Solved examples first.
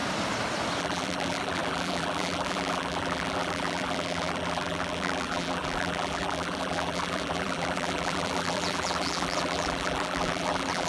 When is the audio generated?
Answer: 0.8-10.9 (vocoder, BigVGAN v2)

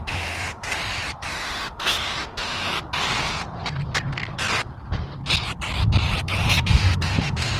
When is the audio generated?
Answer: 0.0-0.8 (autoencoder, DAC-VAE); 1.3-2.7; 6.6-7.6

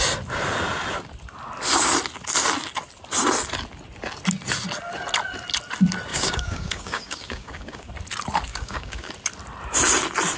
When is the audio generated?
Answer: 6.1-7.9 (codec, DAC); 8.5-9.1

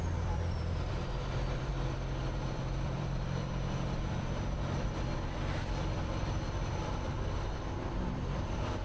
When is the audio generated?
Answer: 0.0-1.7 (vocoder, BigVGAN v2); 2.3-8.8

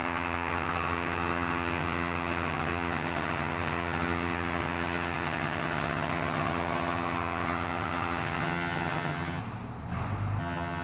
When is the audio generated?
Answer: 0.0-9.4 (vocoder, HiFi-GAN); 10.4-10.8

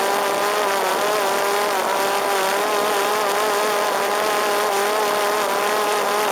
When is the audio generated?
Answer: none

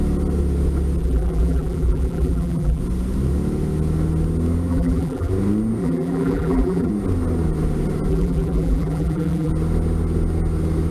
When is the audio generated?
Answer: 1.0-2.8 (vocoder, BigVGAN v2); 4.7-5.3; 5.8-6.9; 8.1-9.5